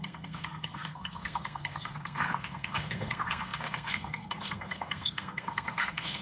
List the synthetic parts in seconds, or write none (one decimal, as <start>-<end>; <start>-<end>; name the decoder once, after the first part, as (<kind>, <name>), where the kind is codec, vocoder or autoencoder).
0.0-6.2 (codec, SNAC)